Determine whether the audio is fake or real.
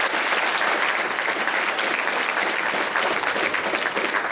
real